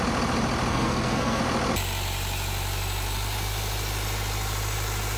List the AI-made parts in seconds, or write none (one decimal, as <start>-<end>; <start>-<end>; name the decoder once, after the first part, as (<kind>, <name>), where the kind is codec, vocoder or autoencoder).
0.7-1.4 (codec, SNAC)